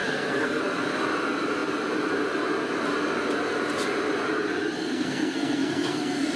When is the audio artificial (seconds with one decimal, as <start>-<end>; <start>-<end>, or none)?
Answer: 0.0-0.6; 4.8-6.4